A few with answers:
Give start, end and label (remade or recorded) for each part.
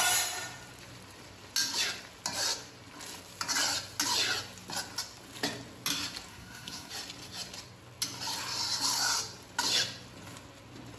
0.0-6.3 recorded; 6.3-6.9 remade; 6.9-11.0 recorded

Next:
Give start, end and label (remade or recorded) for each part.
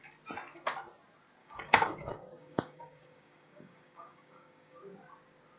0.0-1.4 recorded; 1.4-4.8 remade; 4.8-5.6 recorded